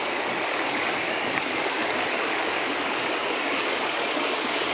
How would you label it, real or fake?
fake